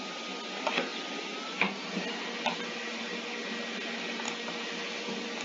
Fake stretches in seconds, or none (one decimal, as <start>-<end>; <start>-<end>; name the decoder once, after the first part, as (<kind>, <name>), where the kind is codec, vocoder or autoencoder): none